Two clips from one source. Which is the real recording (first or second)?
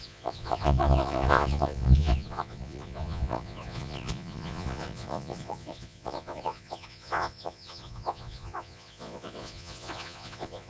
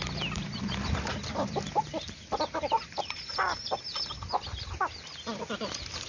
second